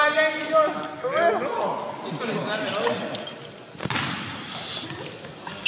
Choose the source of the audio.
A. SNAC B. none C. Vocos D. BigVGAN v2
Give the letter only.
B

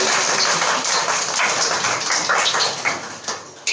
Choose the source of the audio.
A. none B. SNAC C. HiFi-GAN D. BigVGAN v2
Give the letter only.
A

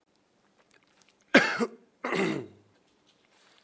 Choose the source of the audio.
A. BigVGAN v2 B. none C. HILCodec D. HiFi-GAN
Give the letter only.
A